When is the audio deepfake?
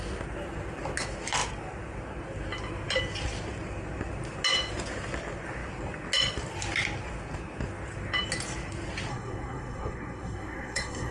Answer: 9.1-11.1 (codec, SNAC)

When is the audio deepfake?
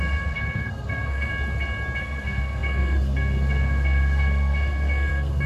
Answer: 0.0-1.3 (codec, SNAC); 2.0-5.5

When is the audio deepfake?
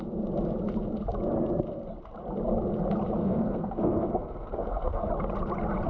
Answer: 3.2-5.1 (codec, SNAC)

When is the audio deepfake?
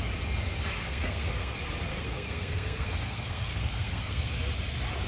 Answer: 0.8-1.5 (codec, SNAC); 1.9-4.3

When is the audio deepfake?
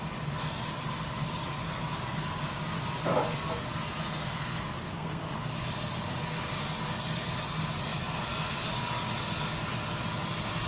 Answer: 4.2-5.5 (codec, SNAC)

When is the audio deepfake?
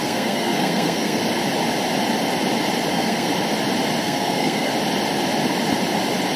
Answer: 0.0-1.2 (codec, SNAC); 2.9-3.3; 4.0-4.7